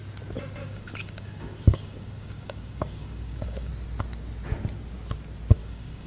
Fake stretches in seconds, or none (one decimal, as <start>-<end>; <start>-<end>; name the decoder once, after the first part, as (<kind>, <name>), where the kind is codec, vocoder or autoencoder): 0.6-3.7 (codec, DAC); 5.6-6.1